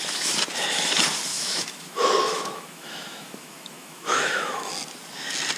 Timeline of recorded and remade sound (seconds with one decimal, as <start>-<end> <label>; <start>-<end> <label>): 0.0-1.3 recorded; 1.3-4.7 remade; 4.7-5.6 recorded